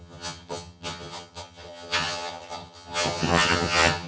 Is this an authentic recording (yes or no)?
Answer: no